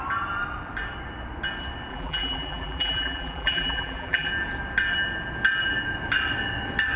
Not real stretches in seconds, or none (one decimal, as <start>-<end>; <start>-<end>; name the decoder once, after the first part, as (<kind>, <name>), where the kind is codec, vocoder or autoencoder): 1.9-4.3 (vocoder, BigVGAN v2)

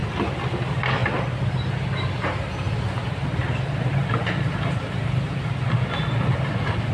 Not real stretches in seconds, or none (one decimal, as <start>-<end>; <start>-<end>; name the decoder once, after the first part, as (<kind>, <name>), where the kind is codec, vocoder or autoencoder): 1.0-1.5 (vocoder, BigVGAN v2); 3.4-5.5

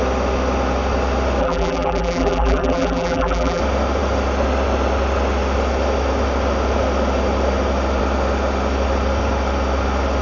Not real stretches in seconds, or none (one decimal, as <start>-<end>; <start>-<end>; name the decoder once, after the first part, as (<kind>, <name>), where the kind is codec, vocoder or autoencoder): 1.4-3.6 (vocoder, BigVGAN v2)

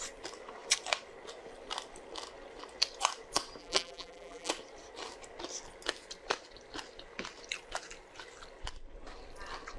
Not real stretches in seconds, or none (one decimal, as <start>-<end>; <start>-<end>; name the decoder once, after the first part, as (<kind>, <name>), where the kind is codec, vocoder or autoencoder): 3.6-4.5 (vocoder, BigVGAN v2)

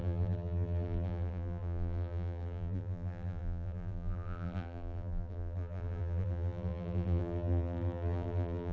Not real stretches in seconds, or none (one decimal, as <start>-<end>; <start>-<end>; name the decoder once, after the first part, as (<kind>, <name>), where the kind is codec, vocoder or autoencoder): 0.0-8.7 (vocoder, BigVGAN v2)

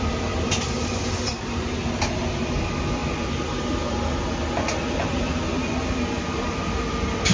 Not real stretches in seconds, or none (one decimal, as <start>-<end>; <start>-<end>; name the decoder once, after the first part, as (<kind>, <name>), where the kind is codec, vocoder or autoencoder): none

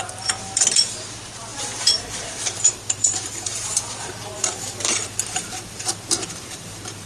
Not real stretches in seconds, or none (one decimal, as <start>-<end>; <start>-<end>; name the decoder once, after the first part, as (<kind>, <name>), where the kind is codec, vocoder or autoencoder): 0.0-7.1 (vocoder, BigVGAN v2)